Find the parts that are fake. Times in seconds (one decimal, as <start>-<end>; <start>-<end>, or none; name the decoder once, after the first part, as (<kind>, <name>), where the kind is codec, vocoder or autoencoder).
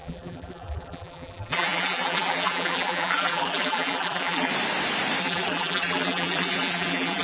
0.0-4.5 (vocoder, BigVGAN v2); 5.2-7.2